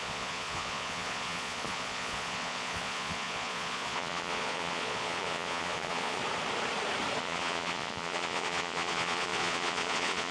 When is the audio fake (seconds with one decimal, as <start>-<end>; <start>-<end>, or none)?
0.0-6.2; 7.2-10.3